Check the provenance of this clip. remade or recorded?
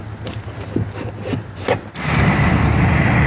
recorded